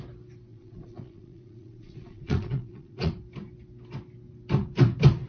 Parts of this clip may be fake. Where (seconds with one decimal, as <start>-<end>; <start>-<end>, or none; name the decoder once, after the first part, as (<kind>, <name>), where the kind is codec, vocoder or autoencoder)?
0.5-3.1 (vocoder, Vocos)

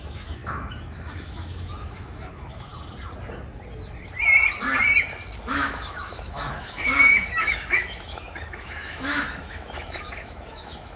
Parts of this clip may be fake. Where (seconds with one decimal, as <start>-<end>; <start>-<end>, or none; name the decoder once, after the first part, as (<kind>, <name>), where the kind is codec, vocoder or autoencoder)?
0.0-2.7 (autoencoder, DAC-VAE); 5.5-11.0